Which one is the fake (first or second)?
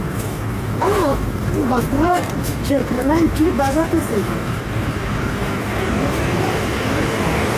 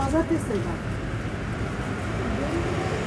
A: first